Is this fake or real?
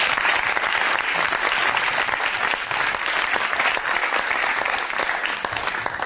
real